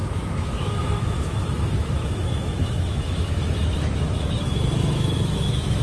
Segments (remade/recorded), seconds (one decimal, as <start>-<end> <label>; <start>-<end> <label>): 0.0-5.8 remade